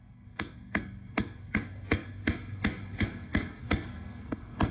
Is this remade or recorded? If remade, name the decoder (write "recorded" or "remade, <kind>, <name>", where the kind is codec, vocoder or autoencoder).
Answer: remade, codec, SNAC